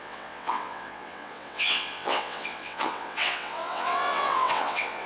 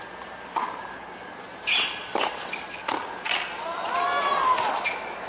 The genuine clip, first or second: second